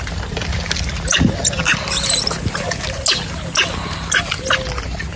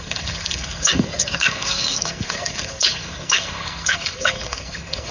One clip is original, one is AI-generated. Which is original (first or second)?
first